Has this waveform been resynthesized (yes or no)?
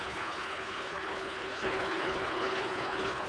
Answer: yes